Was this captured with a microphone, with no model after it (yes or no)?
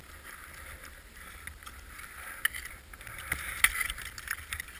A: yes